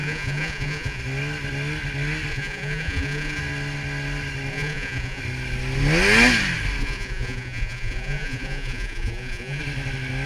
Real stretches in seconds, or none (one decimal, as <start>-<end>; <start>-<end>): 1.0-2.3; 3.4-4.5; 5.2-6.8; 9.6-10.3